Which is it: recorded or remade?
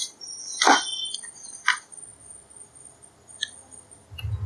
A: recorded